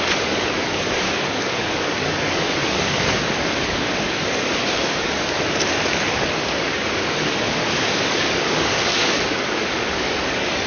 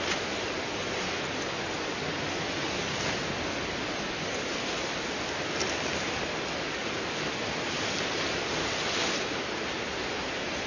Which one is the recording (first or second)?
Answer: second